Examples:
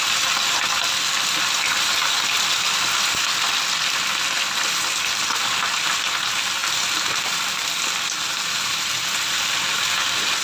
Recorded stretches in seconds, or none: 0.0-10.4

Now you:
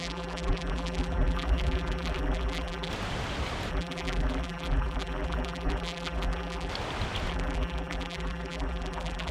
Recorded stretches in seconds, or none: 2.9-3.7; 6.7-7.3